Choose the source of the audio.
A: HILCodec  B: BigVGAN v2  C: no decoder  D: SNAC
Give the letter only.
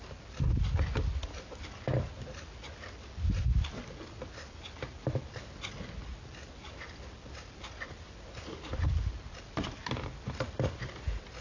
C